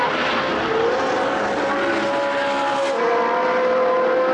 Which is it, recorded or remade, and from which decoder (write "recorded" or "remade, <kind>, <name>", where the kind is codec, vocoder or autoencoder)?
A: recorded